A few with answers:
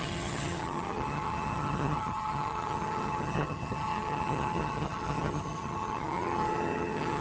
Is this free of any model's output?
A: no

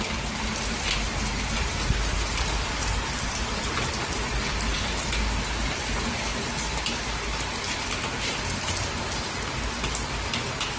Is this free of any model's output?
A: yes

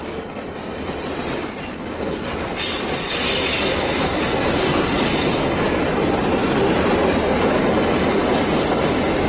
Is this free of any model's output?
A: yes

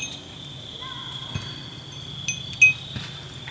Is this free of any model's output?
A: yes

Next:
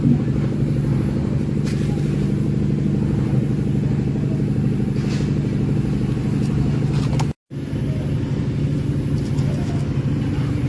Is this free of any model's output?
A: yes